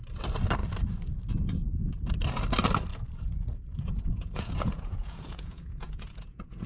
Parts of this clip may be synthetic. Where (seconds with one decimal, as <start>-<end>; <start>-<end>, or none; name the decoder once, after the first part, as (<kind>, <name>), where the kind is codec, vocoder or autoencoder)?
2.9-6.7 (vocoder, Vocos)